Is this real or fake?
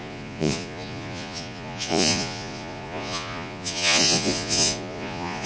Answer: fake